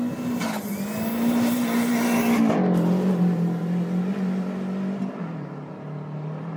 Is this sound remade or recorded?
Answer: recorded